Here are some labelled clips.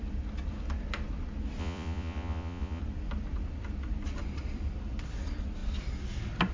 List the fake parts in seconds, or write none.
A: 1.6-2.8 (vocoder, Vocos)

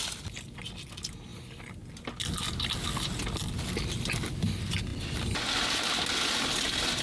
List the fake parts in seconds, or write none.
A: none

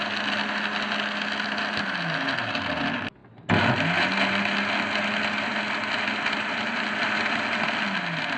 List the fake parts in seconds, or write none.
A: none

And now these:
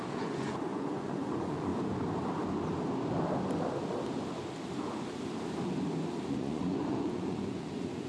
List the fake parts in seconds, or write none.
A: 0.0-1.7 (vocoder, Vocos); 6.3-8.1